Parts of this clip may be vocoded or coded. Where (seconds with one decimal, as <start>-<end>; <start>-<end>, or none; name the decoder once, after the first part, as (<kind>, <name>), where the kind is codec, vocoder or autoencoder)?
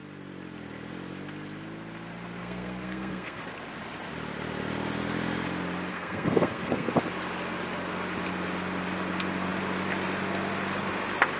2.4-3.4 (codec, SNAC); 5.9-6.9